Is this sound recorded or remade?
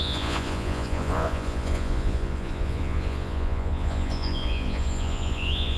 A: remade